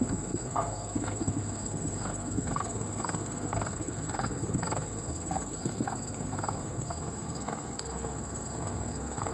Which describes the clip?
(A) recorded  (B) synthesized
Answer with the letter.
B